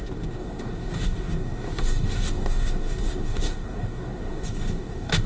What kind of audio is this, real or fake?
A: fake